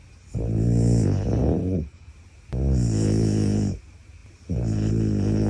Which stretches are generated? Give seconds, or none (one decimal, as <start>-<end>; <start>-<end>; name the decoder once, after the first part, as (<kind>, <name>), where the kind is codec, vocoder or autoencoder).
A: 1.6-2.1 (codec, HILCodec)